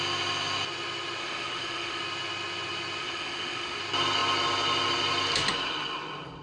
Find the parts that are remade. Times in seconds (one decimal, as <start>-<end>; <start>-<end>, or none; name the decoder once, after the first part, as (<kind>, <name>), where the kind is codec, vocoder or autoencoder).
1.2-2.0 (autoencoder, DAC-VAE); 3.0-3.8